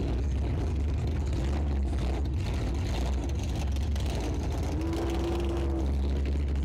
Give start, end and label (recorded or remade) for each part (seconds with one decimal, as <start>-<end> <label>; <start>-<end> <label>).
0.0-6.6 recorded